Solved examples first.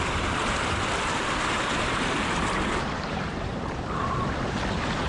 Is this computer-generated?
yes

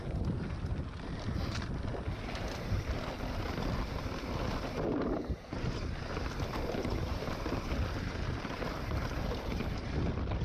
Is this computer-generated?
no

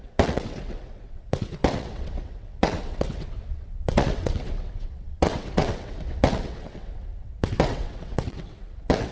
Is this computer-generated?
yes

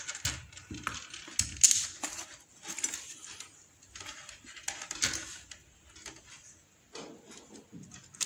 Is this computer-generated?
no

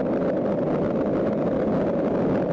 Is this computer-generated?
no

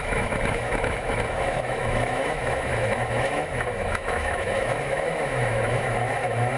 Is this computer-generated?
yes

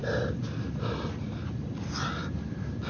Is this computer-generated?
no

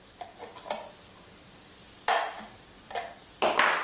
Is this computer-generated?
no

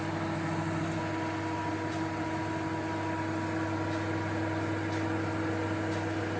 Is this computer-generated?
no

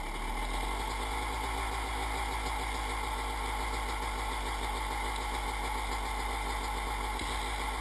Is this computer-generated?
no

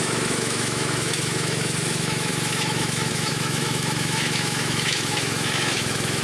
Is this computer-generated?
yes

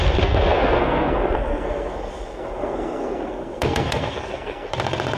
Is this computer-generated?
yes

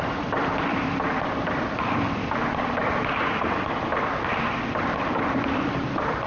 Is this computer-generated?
yes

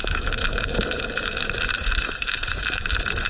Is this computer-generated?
yes